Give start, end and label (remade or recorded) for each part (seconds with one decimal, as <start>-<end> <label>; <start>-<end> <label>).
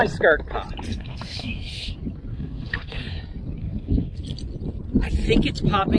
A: 0.0-0.9 recorded; 0.9-1.9 remade; 1.9-2.3 recorded; 2.3-3.2 remade; 3.2-3.6 recorded; 3.6-4.2 remade; 4.2-6.0 recorded